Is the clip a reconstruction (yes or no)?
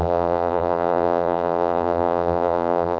yes